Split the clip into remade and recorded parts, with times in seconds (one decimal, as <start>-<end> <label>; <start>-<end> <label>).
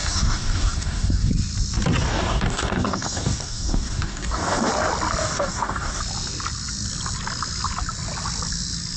0.0-1.3 remade; 1.3-2.1 recorded; 2.1-4.7 remade; 4.7-5.2 recorded; 5.2-6.0 remade; 6.0-9.0 recorded